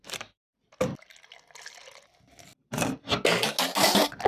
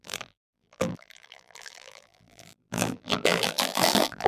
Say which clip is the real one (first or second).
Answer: first